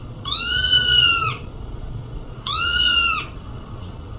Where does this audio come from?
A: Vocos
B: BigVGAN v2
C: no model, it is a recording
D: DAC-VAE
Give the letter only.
A